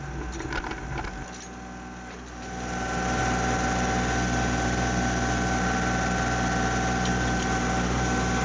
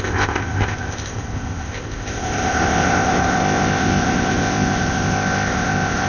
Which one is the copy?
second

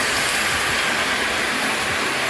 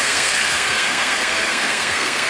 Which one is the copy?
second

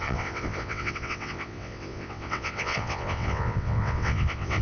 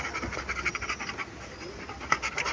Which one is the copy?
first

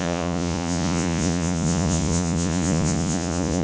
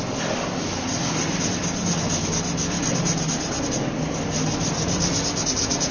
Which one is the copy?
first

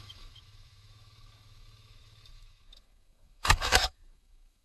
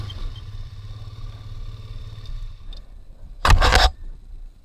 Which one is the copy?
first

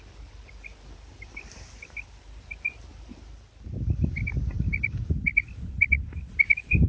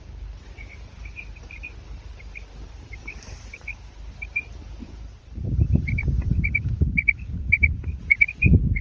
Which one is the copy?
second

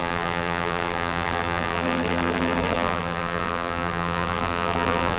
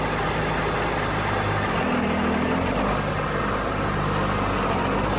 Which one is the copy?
first